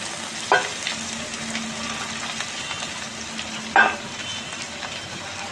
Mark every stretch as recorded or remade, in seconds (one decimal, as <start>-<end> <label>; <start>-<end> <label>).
0.0-5.5 recorded